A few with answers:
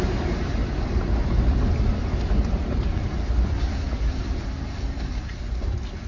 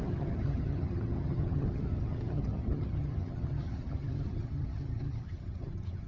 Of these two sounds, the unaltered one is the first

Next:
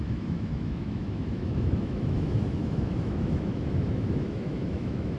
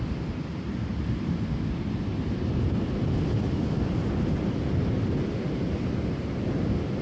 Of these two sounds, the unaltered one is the second